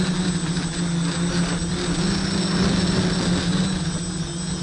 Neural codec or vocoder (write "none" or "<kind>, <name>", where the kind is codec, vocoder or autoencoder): none